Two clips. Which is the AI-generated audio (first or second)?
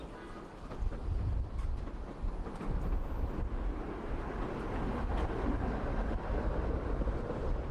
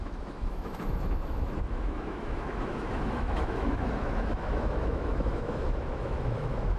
second